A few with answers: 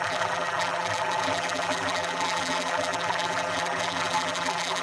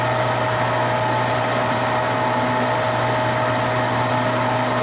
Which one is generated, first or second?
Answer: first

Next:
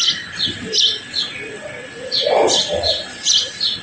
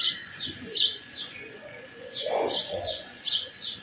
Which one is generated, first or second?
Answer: second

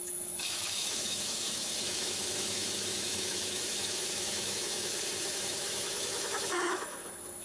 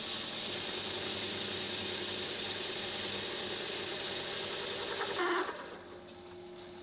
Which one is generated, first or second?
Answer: first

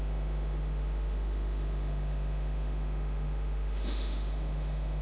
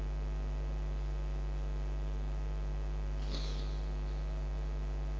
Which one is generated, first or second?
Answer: first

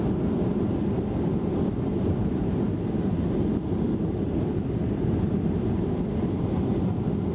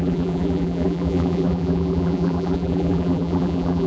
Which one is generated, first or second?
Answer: second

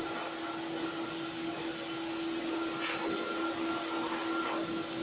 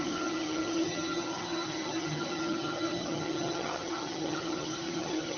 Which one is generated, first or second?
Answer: second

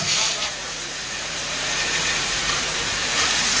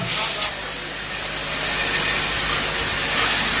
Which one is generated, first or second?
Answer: first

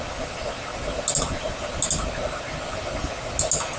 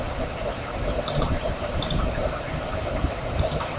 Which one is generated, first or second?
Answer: second